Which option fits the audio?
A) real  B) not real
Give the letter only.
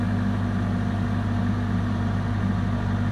B